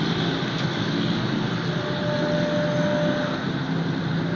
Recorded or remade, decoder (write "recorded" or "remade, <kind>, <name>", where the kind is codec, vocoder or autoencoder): recorded